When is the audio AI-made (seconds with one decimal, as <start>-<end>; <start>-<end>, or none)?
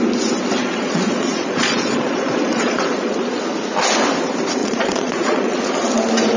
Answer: 0.6-3.4; 4.6-5.6